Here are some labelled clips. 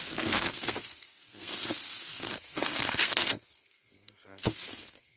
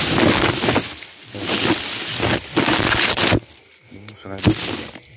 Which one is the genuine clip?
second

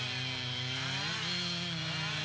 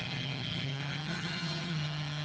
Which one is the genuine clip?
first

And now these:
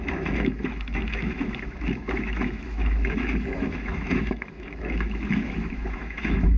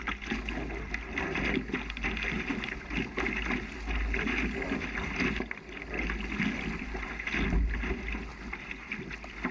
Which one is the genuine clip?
second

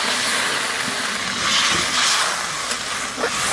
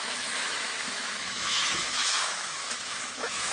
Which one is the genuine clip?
first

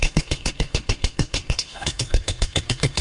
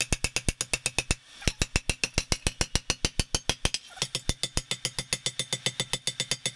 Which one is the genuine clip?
second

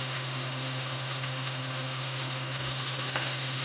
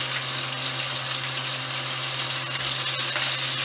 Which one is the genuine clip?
second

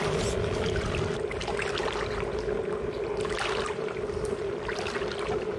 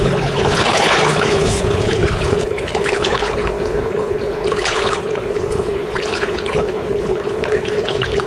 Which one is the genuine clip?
first